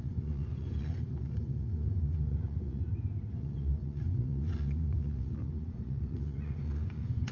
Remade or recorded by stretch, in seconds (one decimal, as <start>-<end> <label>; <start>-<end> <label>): 0.0-2.8 remade; 2.8-3.3 recorded; 3.3-7.3 remade